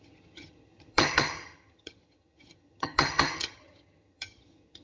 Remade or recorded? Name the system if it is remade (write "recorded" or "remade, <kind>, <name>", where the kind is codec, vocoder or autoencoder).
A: remade, vocoder, HiFi-GAN